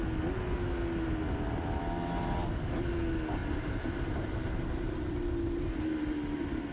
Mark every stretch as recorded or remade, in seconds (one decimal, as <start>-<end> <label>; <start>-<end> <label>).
0.0-3.4 recorded; 3.4-4.9 remade; 4.9-6.7 recorded